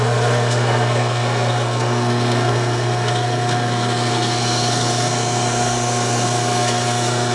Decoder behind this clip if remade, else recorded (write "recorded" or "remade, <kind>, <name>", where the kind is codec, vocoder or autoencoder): remade, codec, SNAC